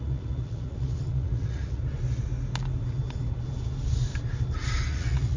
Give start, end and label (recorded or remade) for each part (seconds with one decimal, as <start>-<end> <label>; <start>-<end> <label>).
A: 0.0-1.8 remade; 1.8-4.9 recorded; 4.9-5.4 remade

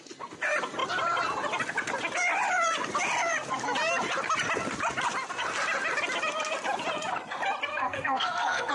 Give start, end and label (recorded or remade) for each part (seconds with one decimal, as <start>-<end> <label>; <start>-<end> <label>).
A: 0.0-7.7 recorded; 7.7-8.7 remade